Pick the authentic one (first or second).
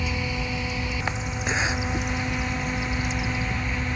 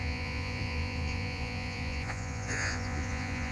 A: first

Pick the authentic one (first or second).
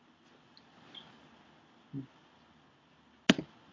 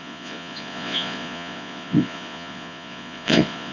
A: first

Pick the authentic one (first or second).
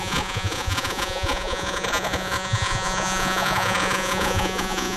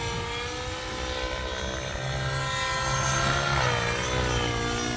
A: second